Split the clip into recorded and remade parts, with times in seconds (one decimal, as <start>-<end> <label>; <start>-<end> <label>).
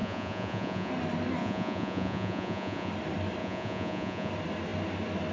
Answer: 0.0-0.9 remade; 0.9-1.4 recorded; 1.4-2.9 remade; 2.9-3.4 recorded; 3.4-4.3 remade; 4.3-5.3 recorded